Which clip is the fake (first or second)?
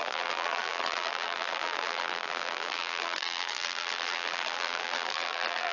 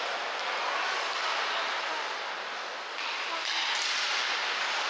first